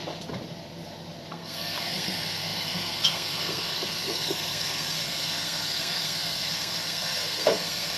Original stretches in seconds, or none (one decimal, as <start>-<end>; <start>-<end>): 0.0-1.3